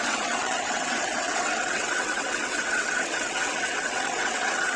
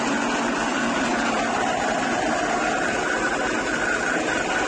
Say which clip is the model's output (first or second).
first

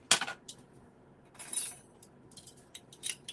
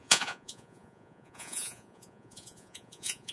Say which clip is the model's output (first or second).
second